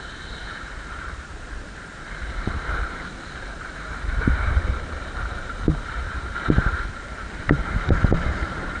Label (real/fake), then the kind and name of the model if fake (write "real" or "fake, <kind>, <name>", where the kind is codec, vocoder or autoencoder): fake, vocoder, BigVGAN v2